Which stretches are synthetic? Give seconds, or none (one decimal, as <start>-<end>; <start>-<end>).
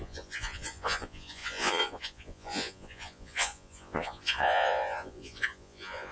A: 0.0-6.1